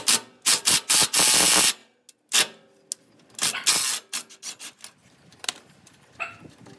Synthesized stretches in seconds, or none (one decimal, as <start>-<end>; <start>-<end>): none